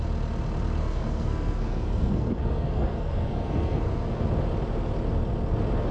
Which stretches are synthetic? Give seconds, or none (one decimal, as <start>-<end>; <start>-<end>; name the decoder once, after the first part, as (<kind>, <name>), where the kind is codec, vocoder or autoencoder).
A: 0.8-4.3 (codec, SNAC)